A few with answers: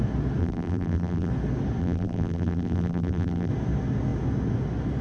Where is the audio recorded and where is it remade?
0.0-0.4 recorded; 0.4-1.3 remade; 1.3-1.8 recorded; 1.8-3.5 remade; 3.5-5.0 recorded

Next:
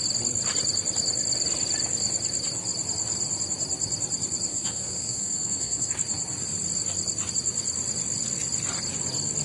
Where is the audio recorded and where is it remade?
0.0-4.5 recorded; 4.5-5.9 remade; 5.9-9.4 recorded